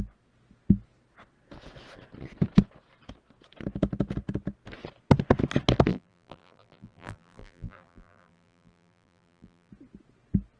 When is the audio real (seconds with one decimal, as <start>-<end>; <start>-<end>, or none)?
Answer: 0.0-5.9; 9.7-10.6